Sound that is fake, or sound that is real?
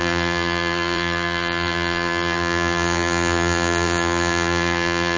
fake